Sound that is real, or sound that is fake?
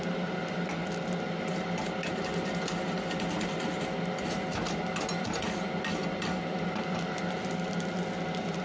real